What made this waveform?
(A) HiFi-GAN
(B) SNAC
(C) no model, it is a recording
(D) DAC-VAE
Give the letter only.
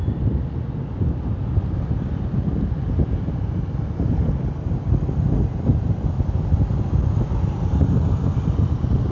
C